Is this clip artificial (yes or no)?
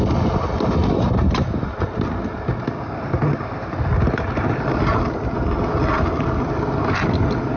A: no